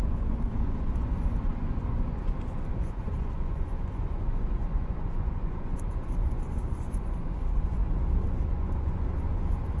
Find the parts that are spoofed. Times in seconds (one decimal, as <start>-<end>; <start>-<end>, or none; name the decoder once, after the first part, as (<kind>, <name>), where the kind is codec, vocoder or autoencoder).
0.0-7.8 (vocoder, Vocos); 8.3-9.8

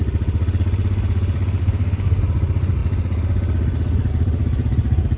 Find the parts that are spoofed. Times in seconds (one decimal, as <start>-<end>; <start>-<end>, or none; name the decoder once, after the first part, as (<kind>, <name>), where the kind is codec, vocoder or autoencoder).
1.6-2.2 (codec, SNAC)

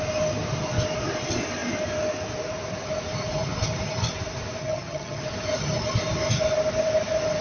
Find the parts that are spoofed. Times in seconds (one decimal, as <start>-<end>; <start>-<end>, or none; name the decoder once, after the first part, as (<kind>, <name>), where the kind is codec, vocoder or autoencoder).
4.6-5.2 (vocoder, HiFi-GAN)

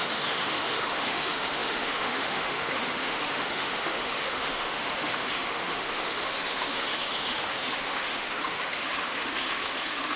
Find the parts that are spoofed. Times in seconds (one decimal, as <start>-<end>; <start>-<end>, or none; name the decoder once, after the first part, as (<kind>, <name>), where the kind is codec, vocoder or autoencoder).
0.0-10.2 (autoencoder, DAC-VAE)

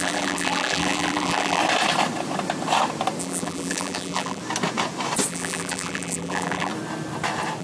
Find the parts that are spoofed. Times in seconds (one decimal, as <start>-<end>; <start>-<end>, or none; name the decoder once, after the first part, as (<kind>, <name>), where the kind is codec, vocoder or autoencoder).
0.0-1.6 (vocoder, BigVGAN v2); 3.2-4.4; 5.3-6.7

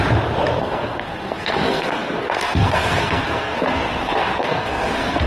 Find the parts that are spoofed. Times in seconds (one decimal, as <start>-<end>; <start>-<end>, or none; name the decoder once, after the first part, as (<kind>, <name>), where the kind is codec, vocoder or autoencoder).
0.6-5.3 (codec, SNAC)